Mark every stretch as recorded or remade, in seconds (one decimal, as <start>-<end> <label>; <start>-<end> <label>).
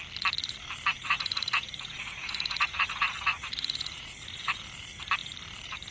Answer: 0.0-1.0 recorded; 1.0-4.5 remade; 4.5-5.9 recorded